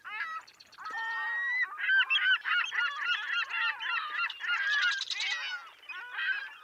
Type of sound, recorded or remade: recorded